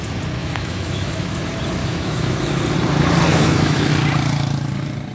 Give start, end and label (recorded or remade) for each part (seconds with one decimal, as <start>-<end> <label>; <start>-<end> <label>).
0.0-0.4 recorded; 0.4-1.4 remade; 1.4-1.8 recorded; 1.8-2.6 remade; 2.6-3.3 recorded; 3.3-3.9 remade; 3.9-5.1 recorded